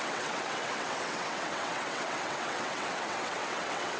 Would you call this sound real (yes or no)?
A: no